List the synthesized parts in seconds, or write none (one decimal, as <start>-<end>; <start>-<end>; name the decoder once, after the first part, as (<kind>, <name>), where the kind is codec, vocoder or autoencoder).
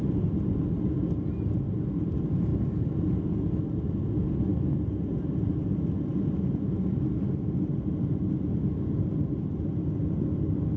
none